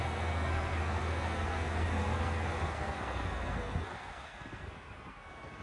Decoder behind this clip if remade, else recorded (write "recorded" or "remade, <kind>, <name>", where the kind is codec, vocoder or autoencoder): remade, codec, SNAC